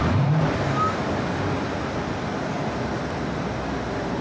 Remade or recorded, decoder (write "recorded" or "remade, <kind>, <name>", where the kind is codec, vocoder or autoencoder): recorded